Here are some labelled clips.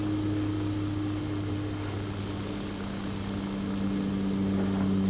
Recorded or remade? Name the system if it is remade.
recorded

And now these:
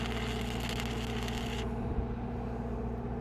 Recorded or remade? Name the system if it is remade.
recorded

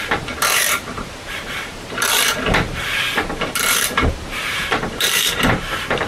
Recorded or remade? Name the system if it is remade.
remade, vocoder, BigVGAN v2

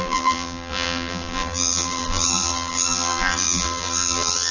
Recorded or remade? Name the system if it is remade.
remade, vocoder, BigVGAN v2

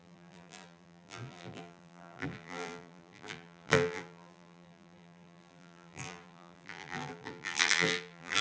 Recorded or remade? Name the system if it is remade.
remade, vocoder, BigVGAN v2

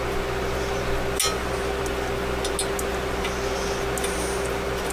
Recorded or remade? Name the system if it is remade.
recorded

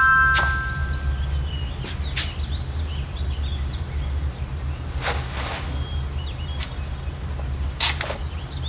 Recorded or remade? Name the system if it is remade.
recorded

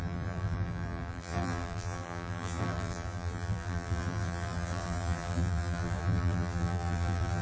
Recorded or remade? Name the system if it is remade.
remade, vocoder, BigVGAN v2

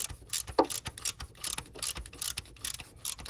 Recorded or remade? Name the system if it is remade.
recorded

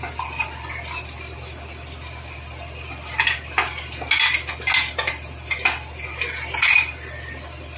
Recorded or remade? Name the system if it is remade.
recorded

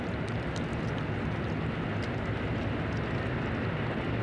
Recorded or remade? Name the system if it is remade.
recorded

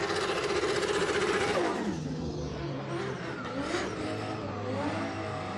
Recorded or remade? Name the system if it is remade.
recorded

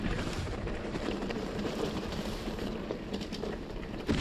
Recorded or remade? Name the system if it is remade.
remade, vocoder, BigVGAN v2